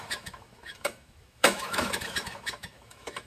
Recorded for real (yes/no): no